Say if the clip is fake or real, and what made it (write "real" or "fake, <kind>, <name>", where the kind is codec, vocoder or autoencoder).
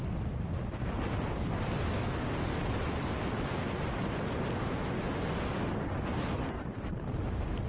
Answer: real